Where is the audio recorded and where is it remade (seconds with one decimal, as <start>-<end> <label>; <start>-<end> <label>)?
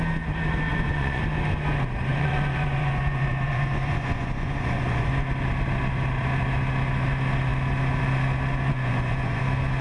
0.0-0.7 recorded; 0.7-1.2 remade; 1.2-2.1 recorded; 2.1-5.1 remade; 5.1-8.7 recorded; 8.7-9.4 remade; 9.4-9.8 recorded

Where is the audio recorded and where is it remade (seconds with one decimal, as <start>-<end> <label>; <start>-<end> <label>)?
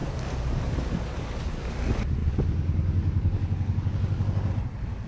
0.0-1.7 remade; 1.7-2.2 recorded; 2.2-4.5 remade; 4.5-5.1 recorded